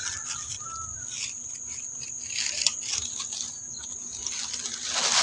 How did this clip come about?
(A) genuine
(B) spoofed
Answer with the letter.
A